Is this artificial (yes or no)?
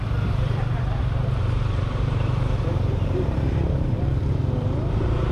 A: yes